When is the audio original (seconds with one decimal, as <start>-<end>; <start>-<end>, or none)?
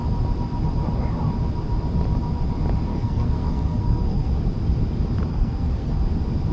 0.0-2.9; 4.3-5.3; 5.9-6.5